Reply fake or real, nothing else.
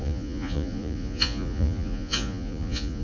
fake